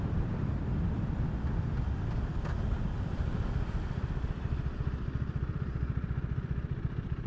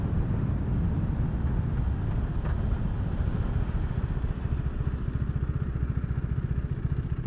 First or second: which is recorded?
second